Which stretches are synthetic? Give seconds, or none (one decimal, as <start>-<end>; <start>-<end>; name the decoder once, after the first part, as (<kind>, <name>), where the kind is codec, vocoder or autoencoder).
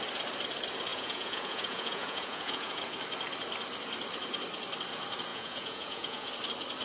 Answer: 0.9-2.8 (vocoder, Vocos); 5.3-6.3